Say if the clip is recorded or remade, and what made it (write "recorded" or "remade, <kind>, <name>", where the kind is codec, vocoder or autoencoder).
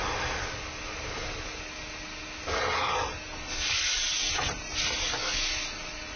recorded